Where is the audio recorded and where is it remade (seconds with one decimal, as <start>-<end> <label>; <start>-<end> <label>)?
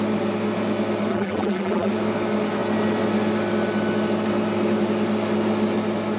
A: 0.0-1.1 recorded; 1.1-1.9 remade; 1.9-6.2 recorded